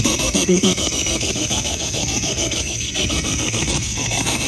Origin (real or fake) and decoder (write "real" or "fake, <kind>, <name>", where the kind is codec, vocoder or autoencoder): fake, codec, SNAC